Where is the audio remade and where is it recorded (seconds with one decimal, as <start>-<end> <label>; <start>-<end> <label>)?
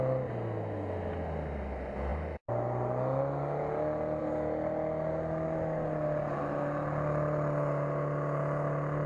0.0-9.1 recorded